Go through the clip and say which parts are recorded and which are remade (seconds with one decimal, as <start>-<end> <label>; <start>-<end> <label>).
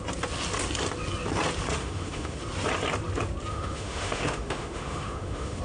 0.0-1.8 recorded; 1.8-2.4 remade; 2.4-3.5 recorded; 3.5-5.6 remade